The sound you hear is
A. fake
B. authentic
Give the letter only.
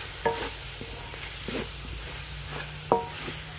B